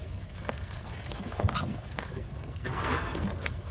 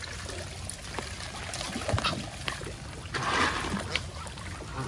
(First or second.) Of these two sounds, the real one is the second